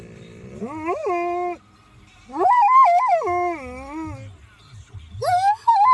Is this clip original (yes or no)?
yes